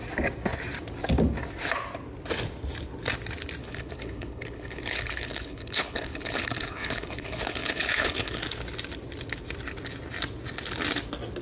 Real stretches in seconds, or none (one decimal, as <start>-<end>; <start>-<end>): 0.0-3.6; 8.4-11.4